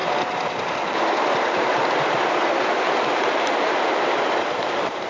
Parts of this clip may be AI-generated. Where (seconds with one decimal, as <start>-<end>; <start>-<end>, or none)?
3.1-5.1